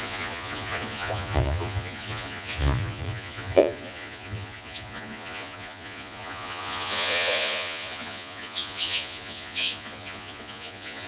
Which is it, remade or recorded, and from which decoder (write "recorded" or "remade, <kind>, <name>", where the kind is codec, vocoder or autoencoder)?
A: remade, vocoder, Vocos